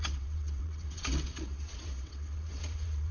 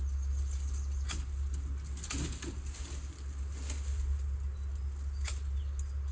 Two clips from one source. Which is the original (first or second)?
second